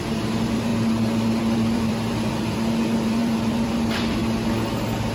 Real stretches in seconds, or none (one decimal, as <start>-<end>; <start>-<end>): 0.7-1.4; 4.2-5.1